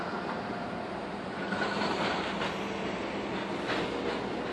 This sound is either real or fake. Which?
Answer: real